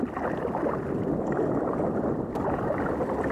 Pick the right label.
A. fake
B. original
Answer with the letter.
B